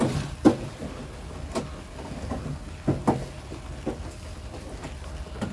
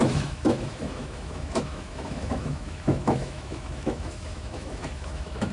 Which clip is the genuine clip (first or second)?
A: first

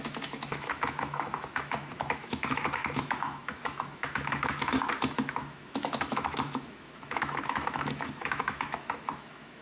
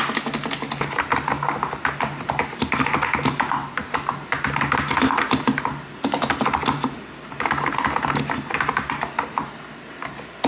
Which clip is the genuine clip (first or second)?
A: second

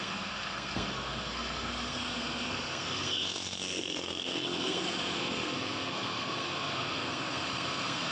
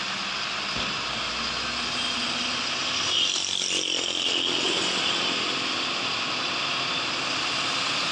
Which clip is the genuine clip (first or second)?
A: second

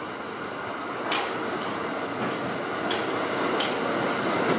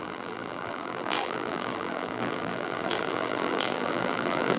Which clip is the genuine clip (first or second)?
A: first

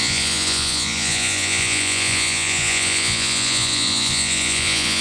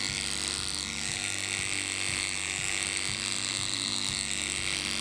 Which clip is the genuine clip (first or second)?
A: second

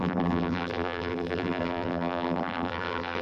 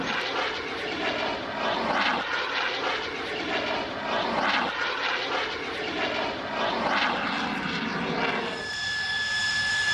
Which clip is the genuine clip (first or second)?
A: second